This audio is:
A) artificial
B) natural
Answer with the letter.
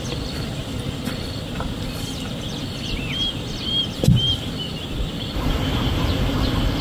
B